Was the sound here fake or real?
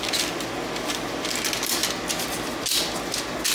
real